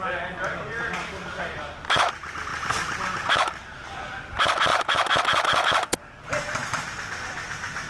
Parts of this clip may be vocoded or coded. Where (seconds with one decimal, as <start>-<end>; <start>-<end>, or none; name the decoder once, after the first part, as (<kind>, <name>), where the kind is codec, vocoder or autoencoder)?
none